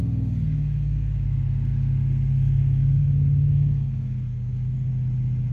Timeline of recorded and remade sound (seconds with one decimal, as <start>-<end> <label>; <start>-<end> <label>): 0.0-4.9 remade; 4.9-5.5 recorded